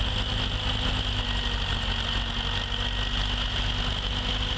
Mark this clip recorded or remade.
recorded